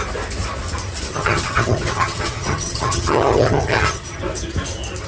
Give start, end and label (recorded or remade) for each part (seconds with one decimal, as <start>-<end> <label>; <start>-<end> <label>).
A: 0.0-1.1 recorded; 1.1-4.2 remade; 4.2-5.1 recorded